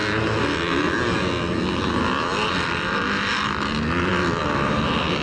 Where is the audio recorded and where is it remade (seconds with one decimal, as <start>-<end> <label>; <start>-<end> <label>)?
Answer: 0.0-5.2 recorded